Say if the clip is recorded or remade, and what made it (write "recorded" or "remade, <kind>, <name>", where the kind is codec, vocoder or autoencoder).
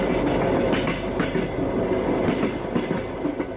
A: recorded